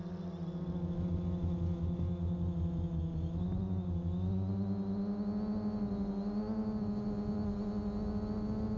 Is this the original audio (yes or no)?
yes